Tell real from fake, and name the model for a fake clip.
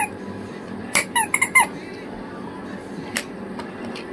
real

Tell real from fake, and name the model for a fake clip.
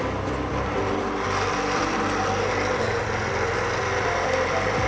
real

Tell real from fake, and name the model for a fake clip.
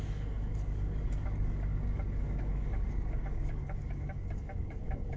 fake, codec, DAC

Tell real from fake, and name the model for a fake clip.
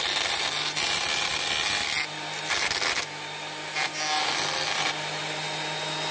real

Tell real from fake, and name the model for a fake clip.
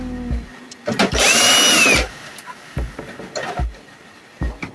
real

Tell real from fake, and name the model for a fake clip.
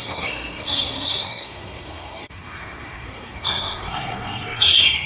fake, codec, SNAC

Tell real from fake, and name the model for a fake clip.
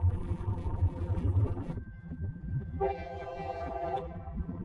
fake, vocoder, BigVGAN v2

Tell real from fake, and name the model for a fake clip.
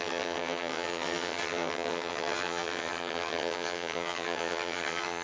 fake, vocoder, HiFi-GAN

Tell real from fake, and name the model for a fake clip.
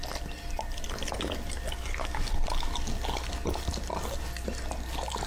real